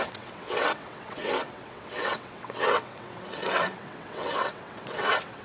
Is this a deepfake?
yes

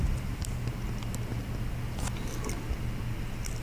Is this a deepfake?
no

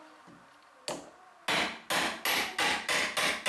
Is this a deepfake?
no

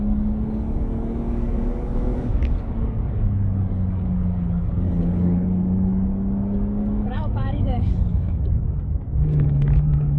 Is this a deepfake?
yes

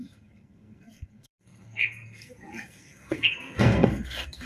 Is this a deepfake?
yes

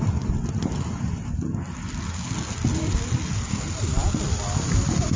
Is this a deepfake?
no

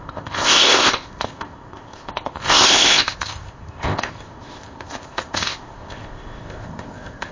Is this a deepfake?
yes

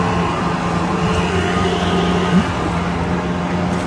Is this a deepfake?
no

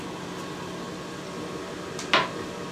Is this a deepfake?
no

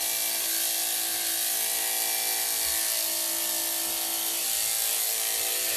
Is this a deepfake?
no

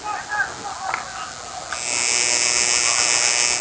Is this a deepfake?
no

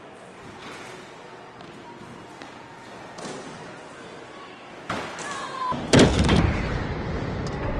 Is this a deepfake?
no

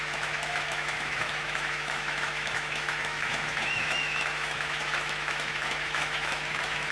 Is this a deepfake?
yes